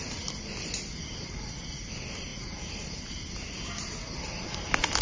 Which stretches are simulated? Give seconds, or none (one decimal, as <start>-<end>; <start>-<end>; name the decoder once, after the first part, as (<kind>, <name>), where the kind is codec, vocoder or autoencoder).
none